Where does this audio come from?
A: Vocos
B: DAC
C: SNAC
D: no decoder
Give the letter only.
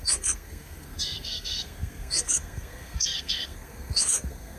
C